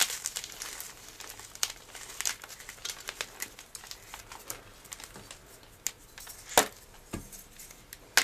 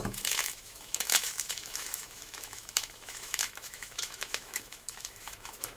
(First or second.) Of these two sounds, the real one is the first